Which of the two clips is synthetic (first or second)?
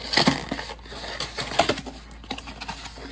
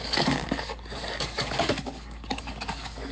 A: second